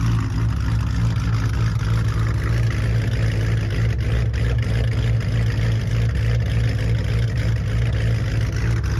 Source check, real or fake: real